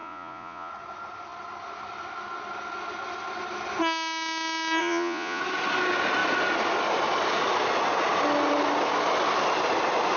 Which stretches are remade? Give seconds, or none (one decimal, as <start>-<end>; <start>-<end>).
0.0-0.7; 4.8-5.4